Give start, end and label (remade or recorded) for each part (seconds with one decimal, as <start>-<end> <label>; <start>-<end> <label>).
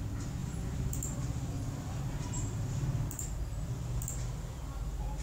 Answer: 0.0-0.4 recorded; 0.4-3.5 remade; 3.5-5.2 recorded